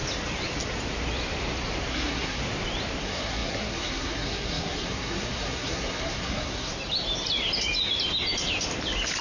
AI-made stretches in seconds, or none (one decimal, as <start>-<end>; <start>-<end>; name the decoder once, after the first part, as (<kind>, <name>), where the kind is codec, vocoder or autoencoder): 1.9-2.4 (codec, SNAC); 3.0-6.7